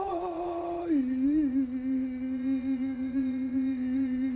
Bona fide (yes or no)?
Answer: no